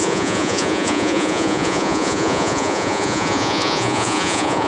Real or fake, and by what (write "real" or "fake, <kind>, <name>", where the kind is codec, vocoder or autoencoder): fake, vocoder, Vocos